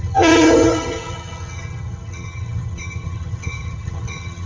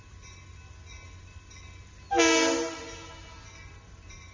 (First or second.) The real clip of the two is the second